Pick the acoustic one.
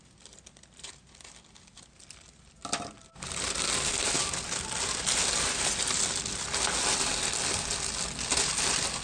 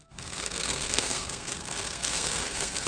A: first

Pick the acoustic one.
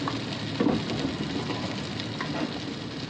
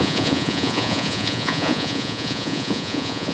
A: first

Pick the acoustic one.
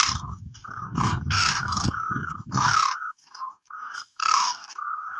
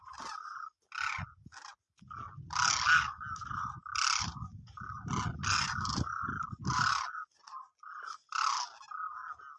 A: second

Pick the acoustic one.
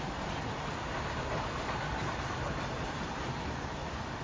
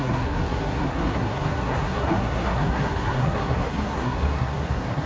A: first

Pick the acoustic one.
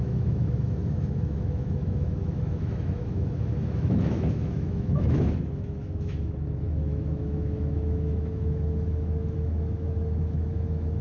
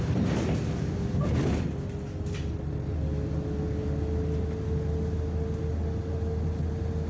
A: second